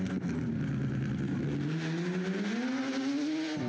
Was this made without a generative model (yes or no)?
yes